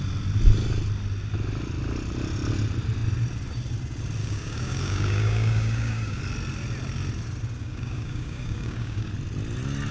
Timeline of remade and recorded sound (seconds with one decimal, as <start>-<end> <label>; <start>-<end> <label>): 0.0-4.2 recorded; 4.2-6.2 remade; 6.2-7.6 recorded; 7.6-9.1 remade; 9.1-9.9 recorded